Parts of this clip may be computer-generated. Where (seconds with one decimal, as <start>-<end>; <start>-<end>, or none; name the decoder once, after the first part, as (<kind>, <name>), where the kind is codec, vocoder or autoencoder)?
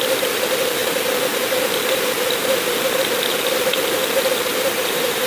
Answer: 4.5-5.3 (vocoder, BigVGAN v2)